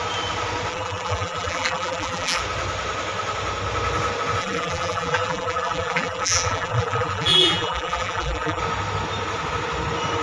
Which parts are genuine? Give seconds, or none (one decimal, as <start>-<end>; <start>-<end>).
0.0-0.7; 2.4-4.4; 8.6-10.2